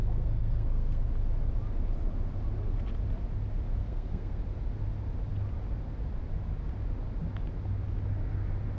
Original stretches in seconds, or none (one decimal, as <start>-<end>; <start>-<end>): 1.0-3.8; 4.4-8.8